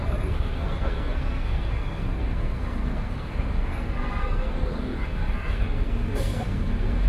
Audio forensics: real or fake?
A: fake